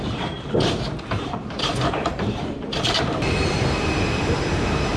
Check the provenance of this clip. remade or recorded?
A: remade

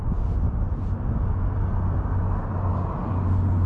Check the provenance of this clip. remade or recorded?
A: recorded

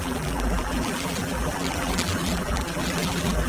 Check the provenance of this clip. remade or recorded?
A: remade